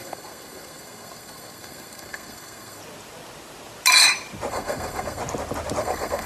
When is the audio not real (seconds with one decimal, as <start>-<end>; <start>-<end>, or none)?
0.0-2.8; 4.5-5.2; 5.8-6.3